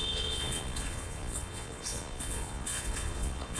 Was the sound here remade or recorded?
remade